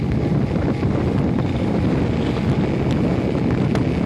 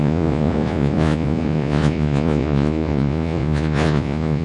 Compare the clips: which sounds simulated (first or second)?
second